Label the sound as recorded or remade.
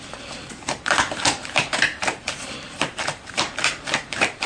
remade